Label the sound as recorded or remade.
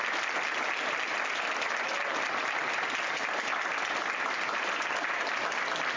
recorded